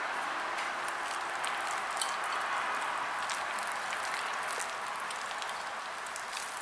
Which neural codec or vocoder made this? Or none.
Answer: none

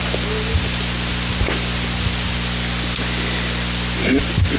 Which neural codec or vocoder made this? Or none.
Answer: none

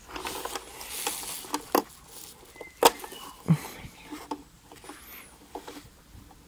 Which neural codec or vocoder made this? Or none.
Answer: none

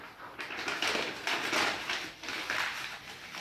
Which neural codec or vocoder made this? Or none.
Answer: none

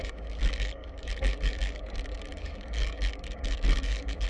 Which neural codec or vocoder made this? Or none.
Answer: codec, DAC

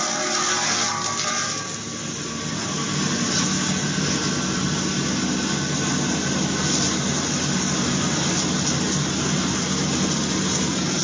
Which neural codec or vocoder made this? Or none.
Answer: none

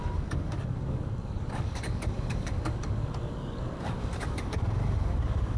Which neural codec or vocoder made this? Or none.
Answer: codec, DAC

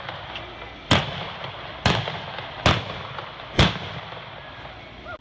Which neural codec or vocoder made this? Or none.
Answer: none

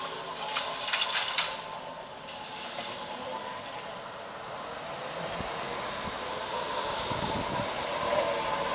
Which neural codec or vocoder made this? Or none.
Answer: none